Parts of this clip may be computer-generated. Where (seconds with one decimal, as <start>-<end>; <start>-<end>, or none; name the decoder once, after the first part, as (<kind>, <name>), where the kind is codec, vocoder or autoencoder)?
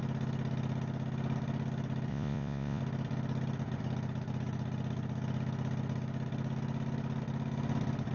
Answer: 2.1-2.8 (vocoder, Vocos)